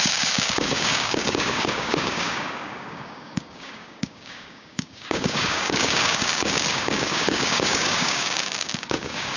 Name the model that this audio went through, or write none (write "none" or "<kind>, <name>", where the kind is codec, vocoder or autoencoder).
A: codec, DAC